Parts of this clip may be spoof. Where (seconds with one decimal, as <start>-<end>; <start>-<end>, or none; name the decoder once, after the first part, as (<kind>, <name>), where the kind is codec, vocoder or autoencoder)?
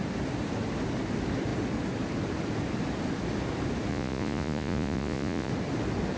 3.9-5.5 (vocoder, Vocos)